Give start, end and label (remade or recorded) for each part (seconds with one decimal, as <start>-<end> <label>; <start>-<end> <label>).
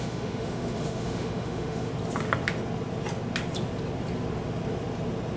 0.0-1.9 remade; 1.9-5.4 recorded